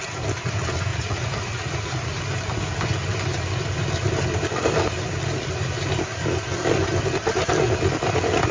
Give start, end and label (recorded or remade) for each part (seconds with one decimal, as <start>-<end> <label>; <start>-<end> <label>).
0.0-0.9 recorded; 0.9-2.3 remade; 2.3-8.5 recorded